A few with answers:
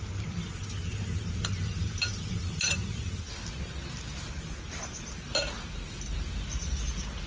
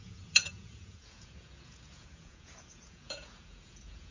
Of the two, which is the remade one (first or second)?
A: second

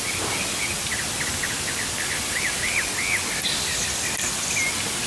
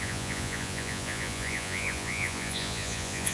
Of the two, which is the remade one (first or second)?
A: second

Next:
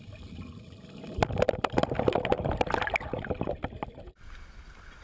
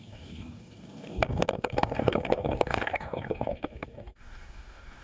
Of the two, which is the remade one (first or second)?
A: second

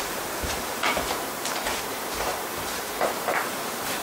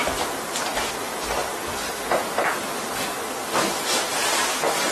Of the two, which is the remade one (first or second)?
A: first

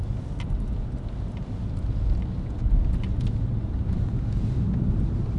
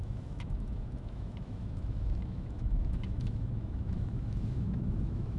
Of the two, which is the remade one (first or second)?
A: second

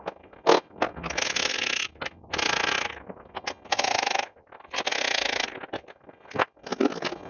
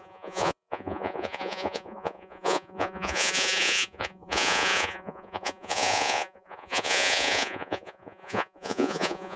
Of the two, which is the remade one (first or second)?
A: second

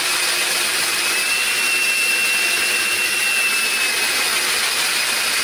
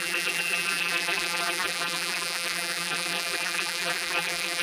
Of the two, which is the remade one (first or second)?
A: second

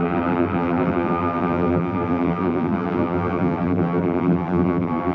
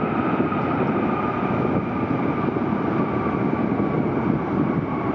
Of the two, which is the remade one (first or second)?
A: first